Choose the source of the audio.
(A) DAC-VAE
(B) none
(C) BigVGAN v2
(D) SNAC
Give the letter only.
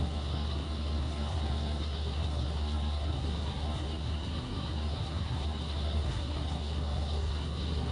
D